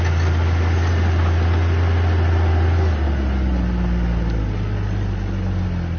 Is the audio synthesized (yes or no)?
no